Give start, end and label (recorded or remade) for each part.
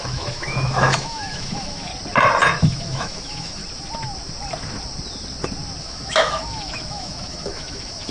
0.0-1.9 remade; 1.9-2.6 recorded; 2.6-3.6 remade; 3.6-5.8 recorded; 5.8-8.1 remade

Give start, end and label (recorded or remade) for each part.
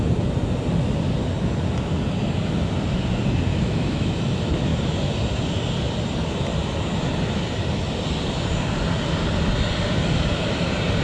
0.0-3.5 recorded; 3.5-4.1 remade; 4.1-11.0 recorded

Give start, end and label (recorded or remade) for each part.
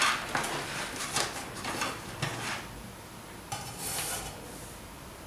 0.0-5.3 recorded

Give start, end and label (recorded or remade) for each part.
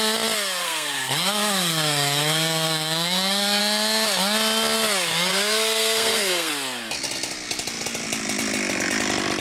0.0-0.6 recorded; 0.6-3.6 remade; 3.6-5.3 recorded; 5.3-6.5 remade; 6.5-9.4 recorded